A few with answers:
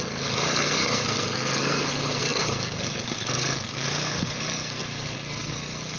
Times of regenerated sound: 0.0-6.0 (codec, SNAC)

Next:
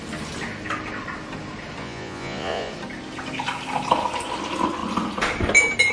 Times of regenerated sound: 1.8-2.7 (vocoder, Vocos)

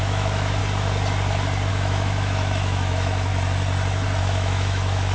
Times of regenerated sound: 0.0-0.6 (autoencoder, DAC-VAE); 1.7-3.3; 4.2-5.1

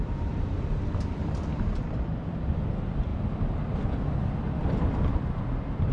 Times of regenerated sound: 0.0-5.9 (vocoder, BigVGAN v2)

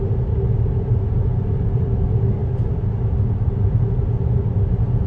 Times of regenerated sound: none

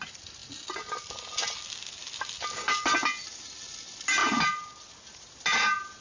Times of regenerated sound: none

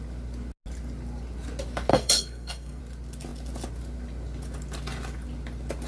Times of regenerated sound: 1.9-2.8 (codec, SNAC)

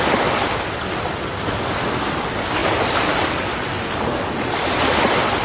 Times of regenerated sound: none